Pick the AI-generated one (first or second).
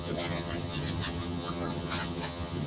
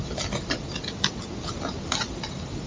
first